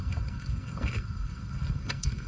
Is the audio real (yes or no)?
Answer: no